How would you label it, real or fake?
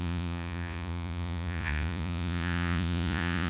fake